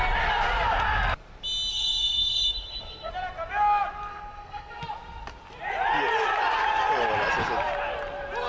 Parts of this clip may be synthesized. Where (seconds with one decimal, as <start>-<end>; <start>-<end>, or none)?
1.7-3.1; 4.1-4.8